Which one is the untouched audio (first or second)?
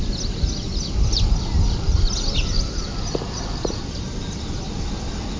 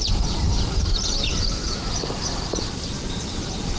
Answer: first